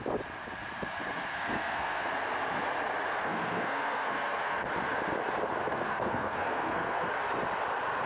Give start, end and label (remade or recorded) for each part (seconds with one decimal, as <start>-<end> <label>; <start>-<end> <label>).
0.0-1.3 recorded; 1.3-2.1 remade; 2.1-3.1 recorded; 3.1-4.7 remade; 4.7-5.6 recorded; 5.6-7.1 remade; 7.1-8.1 recorded